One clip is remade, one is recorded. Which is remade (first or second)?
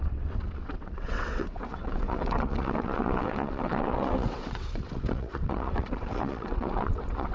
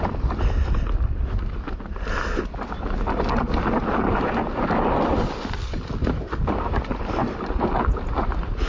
first